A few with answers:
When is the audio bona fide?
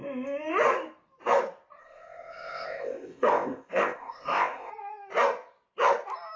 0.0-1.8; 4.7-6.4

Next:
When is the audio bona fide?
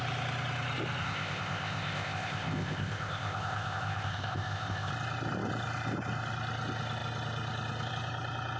0.0-1.0; 4.9-8.6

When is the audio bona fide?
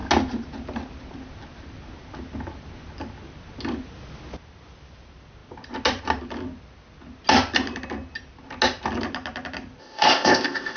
0.0-9.8